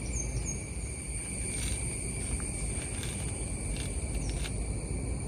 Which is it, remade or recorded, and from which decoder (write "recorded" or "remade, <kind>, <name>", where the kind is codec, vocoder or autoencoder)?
recorded